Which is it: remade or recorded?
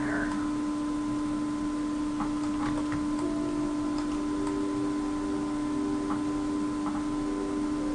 recorded